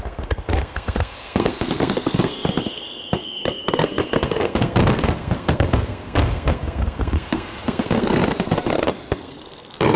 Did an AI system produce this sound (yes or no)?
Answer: yes